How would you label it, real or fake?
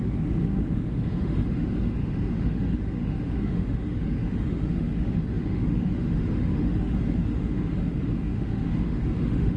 fake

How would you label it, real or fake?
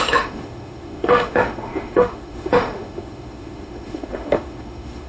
fake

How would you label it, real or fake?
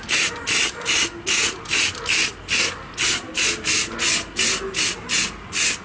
real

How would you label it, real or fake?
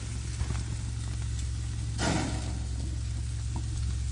real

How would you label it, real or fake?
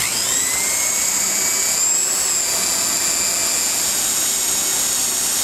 real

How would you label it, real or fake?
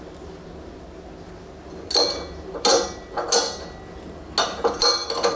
real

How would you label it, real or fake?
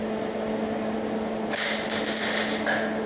real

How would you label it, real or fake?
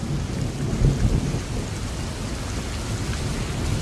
real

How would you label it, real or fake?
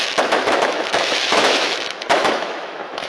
fake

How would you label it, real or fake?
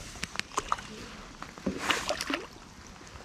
real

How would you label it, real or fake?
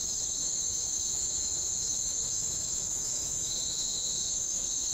fake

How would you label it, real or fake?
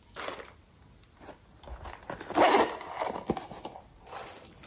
real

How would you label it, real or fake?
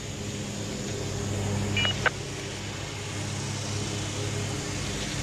real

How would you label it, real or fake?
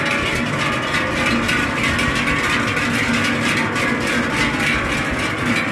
real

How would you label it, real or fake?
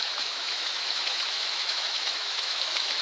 fake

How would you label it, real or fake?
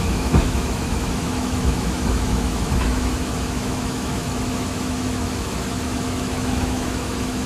fake